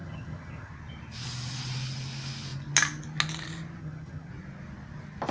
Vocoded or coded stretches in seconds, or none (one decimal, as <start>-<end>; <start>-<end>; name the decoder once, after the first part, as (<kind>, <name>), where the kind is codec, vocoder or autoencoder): 0.0-0.7 (vocoder, HiFi-GAN); 3.8-4.3